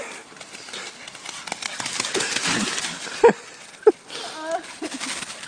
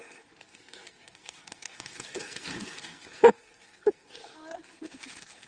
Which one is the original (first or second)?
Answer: first